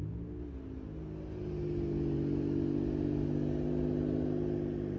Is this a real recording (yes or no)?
yes